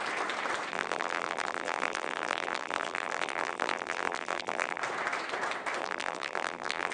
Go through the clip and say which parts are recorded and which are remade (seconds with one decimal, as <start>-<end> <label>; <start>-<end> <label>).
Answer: 0.0-0.7 recorded; 0.7-4.8 remade; 4.8-5.8 recorded; 5.8-6.9 remade